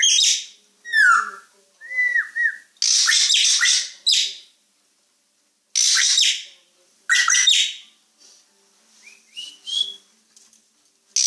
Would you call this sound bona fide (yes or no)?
yes